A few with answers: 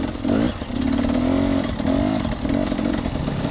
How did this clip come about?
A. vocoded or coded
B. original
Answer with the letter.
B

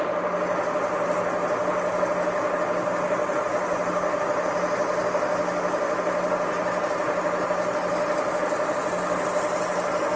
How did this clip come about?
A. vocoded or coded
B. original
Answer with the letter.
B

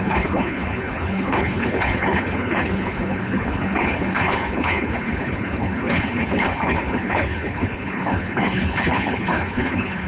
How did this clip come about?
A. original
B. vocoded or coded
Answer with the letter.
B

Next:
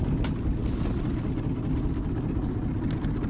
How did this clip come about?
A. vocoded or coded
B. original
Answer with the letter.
B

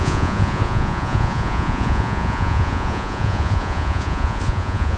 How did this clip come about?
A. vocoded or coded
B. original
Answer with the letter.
A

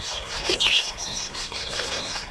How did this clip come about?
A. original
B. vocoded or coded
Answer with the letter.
B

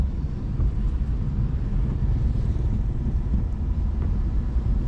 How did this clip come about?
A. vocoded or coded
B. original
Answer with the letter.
A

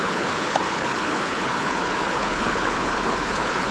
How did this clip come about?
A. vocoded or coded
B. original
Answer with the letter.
A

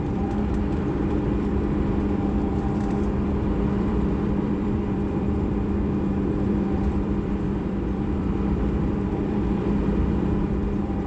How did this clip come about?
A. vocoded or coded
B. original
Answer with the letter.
A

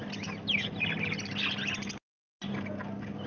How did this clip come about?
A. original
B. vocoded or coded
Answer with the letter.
A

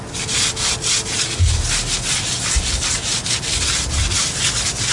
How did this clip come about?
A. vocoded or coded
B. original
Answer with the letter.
B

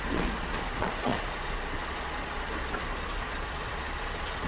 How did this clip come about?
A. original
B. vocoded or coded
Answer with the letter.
B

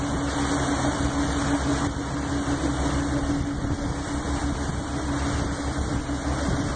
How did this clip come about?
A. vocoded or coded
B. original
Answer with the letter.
B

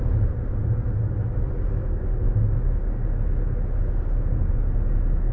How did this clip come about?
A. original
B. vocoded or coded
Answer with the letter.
A